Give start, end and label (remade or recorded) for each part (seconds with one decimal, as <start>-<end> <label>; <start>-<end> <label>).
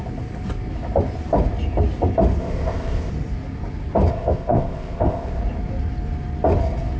0.0-2.4 recorded; 2.4-3.1 remade; 3.1-4.1 recorded; 4.1-5.4 remade; 5.4-7.0 recorded